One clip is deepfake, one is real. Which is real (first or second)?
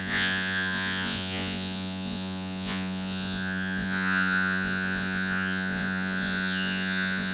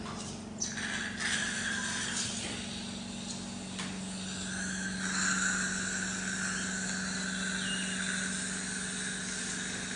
second